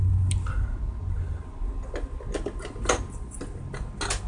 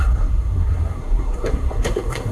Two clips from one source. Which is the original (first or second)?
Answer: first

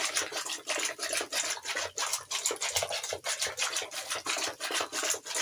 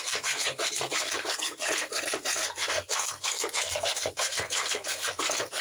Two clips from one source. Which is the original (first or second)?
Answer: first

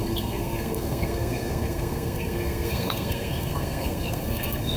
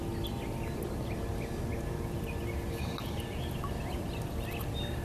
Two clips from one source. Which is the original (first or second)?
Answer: second